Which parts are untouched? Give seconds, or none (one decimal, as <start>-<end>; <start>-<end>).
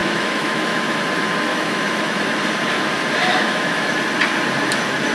1.0-1.5; 2.2-3.3; 4.0-5.1